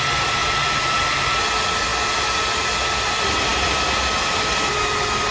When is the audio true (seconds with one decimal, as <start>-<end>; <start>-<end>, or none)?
0.0-0.4; 1.4-1.9; 2.4-5.3